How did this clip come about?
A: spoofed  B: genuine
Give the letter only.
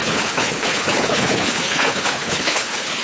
A